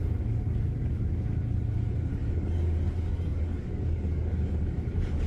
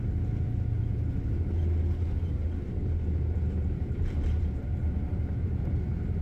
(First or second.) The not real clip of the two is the first